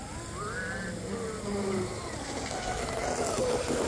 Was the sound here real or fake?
real